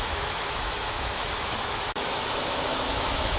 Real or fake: fake